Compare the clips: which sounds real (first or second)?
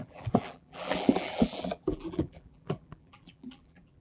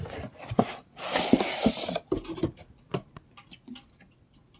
second